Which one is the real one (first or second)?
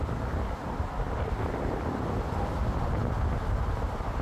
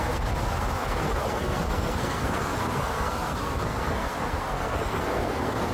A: first